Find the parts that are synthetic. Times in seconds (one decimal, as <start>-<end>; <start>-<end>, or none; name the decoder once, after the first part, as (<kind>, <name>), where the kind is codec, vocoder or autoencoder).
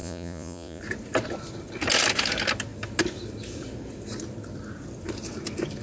0.0-0.8 (vocoder, Vocos)